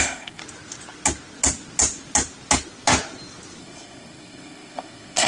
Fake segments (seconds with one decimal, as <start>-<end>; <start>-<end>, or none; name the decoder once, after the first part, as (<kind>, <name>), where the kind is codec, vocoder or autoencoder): 0.0-0.4 (codec, SNAC); 3.6-5.3